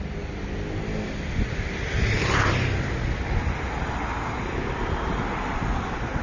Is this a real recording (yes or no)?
yes